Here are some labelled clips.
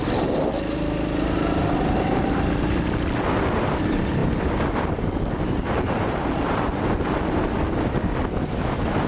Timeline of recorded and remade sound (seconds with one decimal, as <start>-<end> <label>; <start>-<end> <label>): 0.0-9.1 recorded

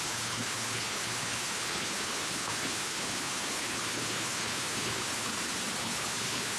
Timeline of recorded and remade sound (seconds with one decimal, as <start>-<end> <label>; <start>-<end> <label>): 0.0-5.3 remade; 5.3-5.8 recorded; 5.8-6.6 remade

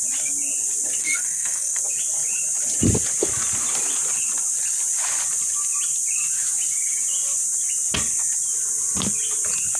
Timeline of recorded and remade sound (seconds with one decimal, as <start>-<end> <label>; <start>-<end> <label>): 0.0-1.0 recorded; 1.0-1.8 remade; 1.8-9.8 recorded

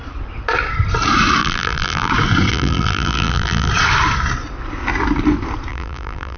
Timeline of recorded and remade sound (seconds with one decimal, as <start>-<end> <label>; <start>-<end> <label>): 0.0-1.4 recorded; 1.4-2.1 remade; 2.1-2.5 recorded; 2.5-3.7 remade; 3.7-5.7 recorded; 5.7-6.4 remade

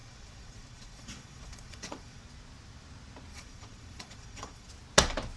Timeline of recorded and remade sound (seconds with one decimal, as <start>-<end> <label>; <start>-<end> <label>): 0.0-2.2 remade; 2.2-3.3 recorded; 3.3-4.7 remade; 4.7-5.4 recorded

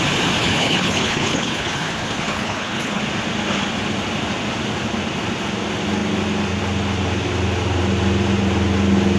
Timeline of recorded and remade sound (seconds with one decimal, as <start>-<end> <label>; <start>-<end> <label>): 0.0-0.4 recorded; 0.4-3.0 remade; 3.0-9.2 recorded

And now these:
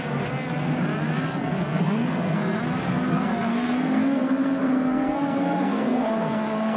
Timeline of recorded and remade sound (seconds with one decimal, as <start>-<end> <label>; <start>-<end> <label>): 0.0-1.4 recorded; 1.4-2.6 remade; 2.6-3.1 recorded; 3.1-6.8 remade